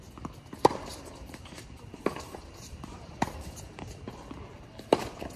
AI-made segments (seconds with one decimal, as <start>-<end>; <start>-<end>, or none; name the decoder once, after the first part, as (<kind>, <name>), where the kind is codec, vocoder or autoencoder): 0.9-4.1 (vocoder, BigVGAN v2)